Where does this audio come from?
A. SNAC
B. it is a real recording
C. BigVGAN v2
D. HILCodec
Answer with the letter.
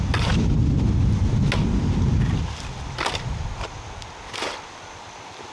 B